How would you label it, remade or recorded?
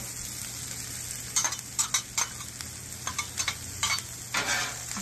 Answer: recorded